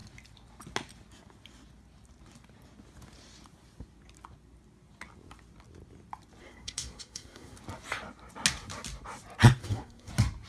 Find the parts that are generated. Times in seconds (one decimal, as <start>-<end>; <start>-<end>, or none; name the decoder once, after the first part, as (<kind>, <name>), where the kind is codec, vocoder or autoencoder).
6.4-7.6 (codec, SNAC); 9.6-10.1